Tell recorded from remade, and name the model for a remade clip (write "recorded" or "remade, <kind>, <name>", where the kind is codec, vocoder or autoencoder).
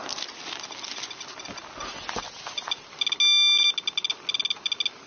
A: recorded